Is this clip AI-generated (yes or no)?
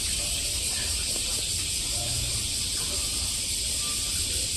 no